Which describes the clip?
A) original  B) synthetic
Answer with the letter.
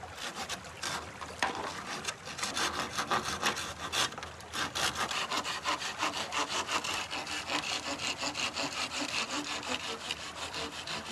A